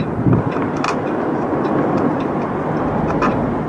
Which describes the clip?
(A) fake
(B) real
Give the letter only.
B